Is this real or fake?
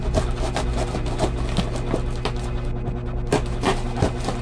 real